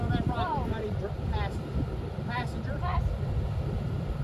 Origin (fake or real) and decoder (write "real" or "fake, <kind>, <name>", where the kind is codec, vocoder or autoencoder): real